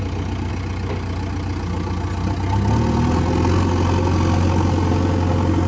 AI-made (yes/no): no